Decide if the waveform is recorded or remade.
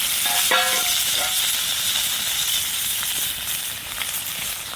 recorded